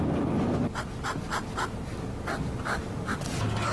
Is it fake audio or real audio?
real